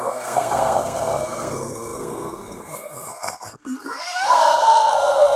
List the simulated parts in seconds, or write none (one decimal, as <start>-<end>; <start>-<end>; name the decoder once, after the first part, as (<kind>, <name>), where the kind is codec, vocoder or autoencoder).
0.0-5.4 (codec, SNAC)